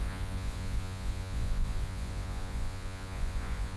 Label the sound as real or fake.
fake